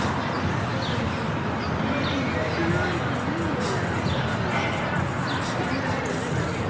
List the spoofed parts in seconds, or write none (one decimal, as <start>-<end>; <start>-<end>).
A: none

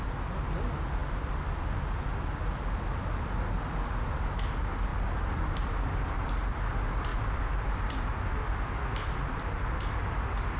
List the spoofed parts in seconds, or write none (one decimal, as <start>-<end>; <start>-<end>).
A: 4.9-6.4

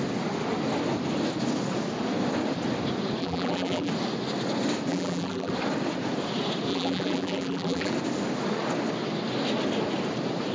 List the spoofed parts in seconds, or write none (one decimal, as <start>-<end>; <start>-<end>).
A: 3.2-3.9; 4.9-5.5; 6.7-7.9